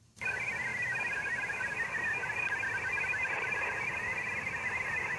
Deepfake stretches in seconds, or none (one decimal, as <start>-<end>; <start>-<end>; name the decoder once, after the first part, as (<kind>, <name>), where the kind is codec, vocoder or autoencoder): none